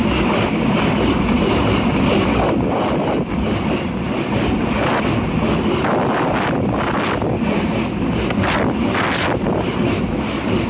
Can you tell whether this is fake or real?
real